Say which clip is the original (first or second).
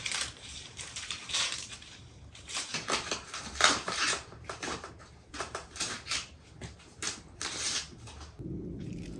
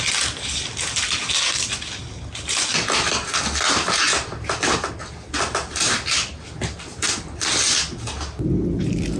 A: second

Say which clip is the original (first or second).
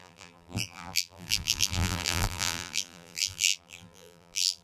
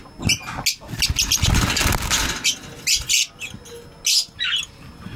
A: second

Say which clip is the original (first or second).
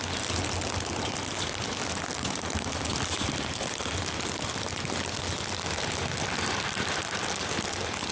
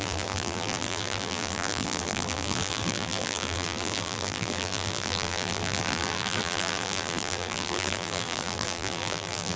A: first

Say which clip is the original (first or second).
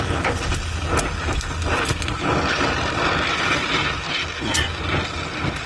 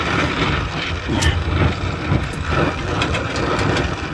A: first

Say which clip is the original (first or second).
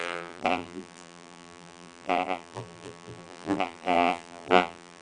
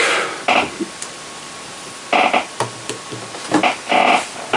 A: second